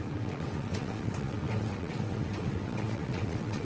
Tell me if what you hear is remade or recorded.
remade